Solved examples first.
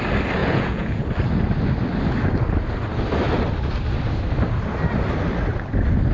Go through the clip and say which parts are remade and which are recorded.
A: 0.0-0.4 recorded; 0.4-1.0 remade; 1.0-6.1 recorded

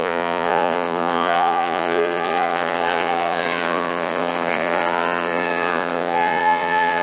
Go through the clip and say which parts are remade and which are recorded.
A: 0.0-7.0 remade

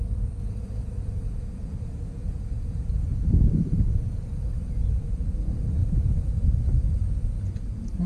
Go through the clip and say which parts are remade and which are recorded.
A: 0.0-8.1 remade

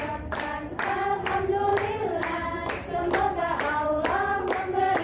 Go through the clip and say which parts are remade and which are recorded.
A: 0.0-5.0 recorded

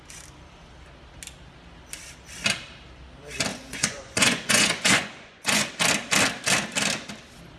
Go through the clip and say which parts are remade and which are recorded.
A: 0.0-3.5 recorded; 3.5-5.7 remade; 5.7-7.6 recorded

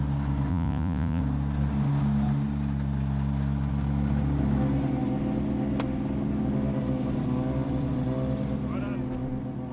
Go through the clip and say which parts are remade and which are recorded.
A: 0.0-0.5 recorded; 0.5-1.2 remade; 1.2-9.7 recorded

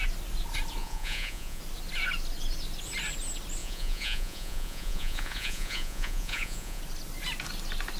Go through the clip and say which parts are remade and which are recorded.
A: 0.0-0.8 recorded; 0.8-1.6 remade; 1.6-3.6 recorded; 3.6-6.8 remade; 6.8-8.0 recorded

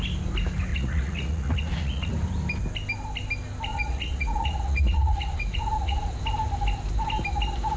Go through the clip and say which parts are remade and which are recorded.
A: 0.0-0.7 recorded; 0.7-2.1 remade; 2.1-3.7 recorded; 3.7-6.1 remade; 6.1-7.8 recorded